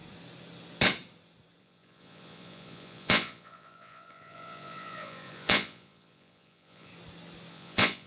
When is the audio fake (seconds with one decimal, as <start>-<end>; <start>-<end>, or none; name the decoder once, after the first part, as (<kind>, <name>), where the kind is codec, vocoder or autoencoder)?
1.6-6.9 (vocoder, Vocos); 7.5-8.1